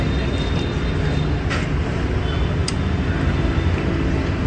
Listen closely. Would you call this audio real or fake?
real